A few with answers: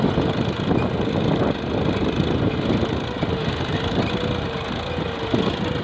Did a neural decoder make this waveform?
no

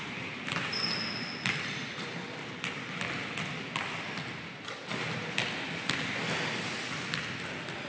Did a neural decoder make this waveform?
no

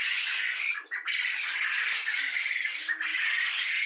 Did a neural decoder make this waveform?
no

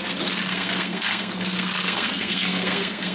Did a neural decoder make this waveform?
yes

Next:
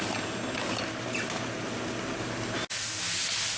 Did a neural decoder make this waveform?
no